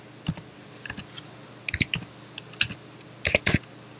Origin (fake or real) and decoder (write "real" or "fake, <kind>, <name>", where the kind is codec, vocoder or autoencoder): real